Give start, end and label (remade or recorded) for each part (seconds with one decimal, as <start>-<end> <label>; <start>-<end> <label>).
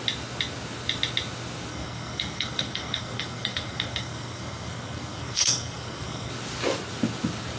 0.0-1.7 recorded; 1.7-6.3 remade; 6.3-7.6 recorded